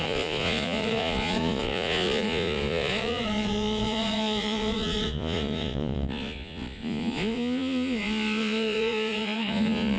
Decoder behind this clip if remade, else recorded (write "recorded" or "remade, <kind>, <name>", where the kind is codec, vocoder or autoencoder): remade, vocoder, Vocos